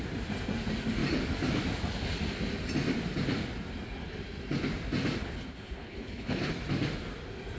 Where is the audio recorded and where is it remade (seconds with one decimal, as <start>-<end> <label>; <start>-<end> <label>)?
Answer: 0.0-5.2 recorded; 5.2-6.5 remade; 6.5-7.6 recorded